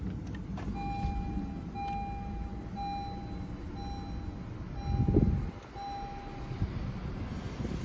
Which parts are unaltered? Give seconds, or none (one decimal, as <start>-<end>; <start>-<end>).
0.0-7.8